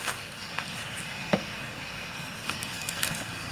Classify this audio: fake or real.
fake